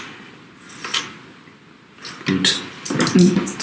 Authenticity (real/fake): real